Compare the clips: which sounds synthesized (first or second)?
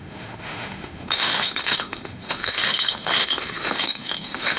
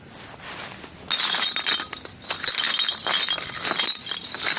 first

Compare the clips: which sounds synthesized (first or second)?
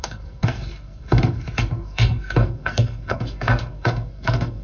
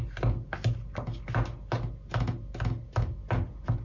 first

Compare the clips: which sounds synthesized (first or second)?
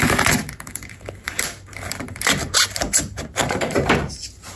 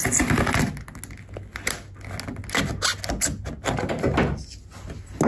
first